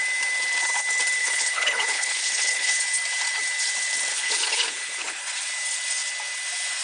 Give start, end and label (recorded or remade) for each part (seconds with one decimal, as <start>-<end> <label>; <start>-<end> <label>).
0.0-1.2 recorded; 1.2-2.7 remade; 2.7-4.1 recorded; 4.1-5.2 remade; 5.2-6.8 recorded